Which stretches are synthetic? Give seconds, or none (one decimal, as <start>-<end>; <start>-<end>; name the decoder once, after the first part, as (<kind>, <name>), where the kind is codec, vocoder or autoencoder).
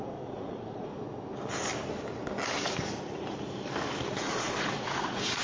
0.0-0.9 (vocoder, Vocos); 4.1-5.4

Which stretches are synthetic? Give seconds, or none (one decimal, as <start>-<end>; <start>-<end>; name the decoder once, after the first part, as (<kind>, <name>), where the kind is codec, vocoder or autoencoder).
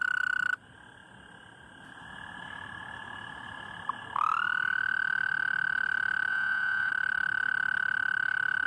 6.3-6.9 (vocoder, Vocos)